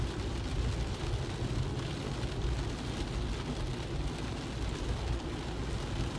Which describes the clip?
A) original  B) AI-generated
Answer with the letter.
A